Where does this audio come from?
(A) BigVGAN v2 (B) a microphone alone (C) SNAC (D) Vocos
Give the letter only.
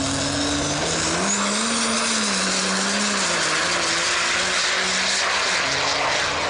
B